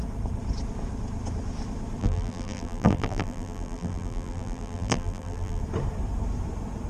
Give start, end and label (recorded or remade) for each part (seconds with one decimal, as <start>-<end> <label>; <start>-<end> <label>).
0.0-2.0 recorded; 2.0-5.6 remade; 5.6-6.9 recorded